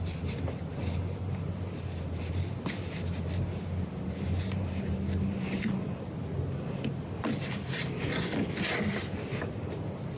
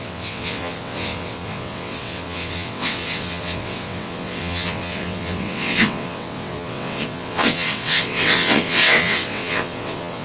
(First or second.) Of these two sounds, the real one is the first